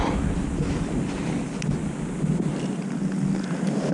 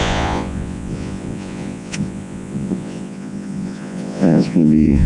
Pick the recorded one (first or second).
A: first